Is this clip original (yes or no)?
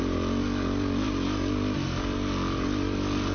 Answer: yes